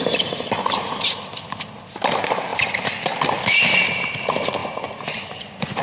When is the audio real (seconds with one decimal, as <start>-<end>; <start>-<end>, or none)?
0.0-4.6